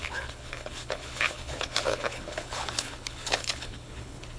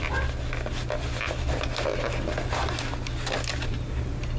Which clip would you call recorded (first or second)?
second